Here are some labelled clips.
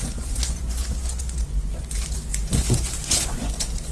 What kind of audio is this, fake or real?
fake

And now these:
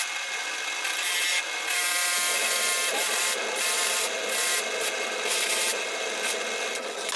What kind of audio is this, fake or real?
real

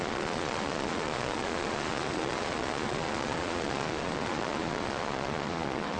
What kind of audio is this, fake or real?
fake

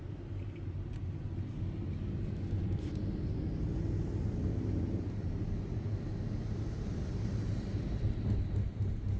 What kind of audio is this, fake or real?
real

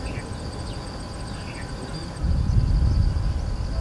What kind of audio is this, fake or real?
real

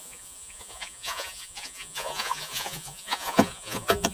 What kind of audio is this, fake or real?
fake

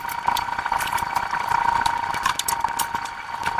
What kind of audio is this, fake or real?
real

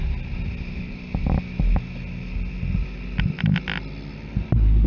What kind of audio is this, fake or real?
real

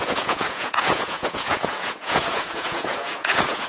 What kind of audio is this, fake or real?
fake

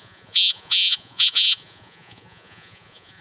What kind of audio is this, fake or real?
fake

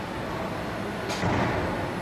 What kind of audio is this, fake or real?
real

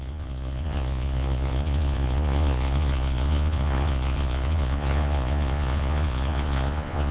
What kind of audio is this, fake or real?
fake